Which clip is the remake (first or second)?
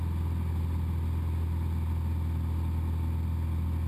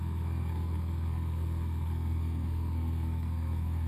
second